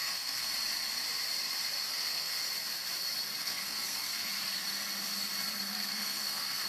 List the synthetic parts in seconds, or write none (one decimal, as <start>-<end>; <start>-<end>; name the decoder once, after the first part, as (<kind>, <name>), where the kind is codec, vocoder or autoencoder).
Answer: 0.0-0.5 (codec, SNAC); 1.9-2.4; 3.4-4.3; 5.7-6.7